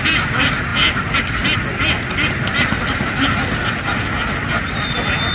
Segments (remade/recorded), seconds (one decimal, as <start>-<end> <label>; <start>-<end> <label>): 0.0-5.3 recorded